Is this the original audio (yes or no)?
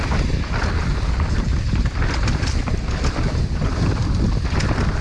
yes